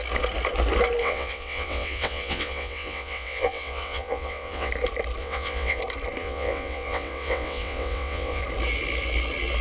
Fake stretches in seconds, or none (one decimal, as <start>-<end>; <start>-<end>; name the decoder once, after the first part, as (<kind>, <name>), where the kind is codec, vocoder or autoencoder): 1.0-4.7 (vocoder, WaveNeXt); 5.2-5.8; 6.2-8.4

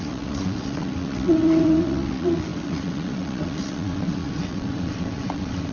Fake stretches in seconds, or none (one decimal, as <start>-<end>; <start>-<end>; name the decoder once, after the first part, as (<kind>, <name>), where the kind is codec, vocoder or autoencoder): 0.0-5.7 (vocoder, WaveNeXt)

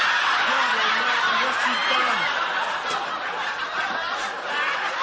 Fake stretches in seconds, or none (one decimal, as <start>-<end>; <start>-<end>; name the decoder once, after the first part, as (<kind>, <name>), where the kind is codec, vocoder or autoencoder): none

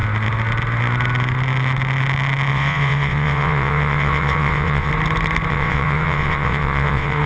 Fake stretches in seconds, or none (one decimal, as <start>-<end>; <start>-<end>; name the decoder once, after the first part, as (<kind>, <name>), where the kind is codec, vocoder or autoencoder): 2.5-4.9 (vocoder, WaveNeXt); 5.5-7.3

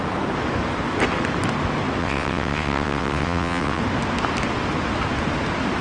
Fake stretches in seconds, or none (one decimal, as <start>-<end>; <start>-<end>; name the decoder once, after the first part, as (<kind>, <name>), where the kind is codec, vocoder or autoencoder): 2.0-3.8 (vocoder, WaveNeXt)

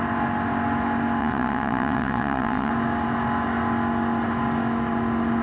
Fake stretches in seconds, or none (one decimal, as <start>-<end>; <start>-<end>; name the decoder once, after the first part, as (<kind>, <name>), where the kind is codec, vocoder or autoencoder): 1.2-2.7 (vocoder, WaveNeXt)